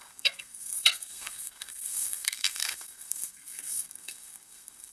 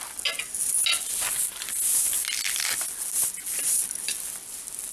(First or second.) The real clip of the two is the second